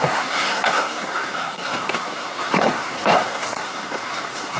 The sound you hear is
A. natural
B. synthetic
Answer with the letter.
B